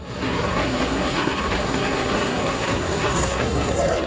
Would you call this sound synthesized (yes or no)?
yes